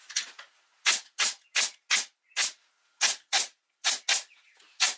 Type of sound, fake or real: real